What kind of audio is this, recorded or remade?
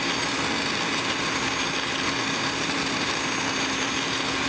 recorded